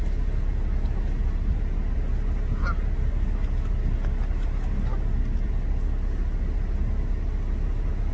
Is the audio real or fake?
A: real